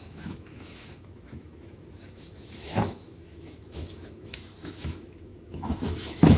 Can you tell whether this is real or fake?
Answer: fake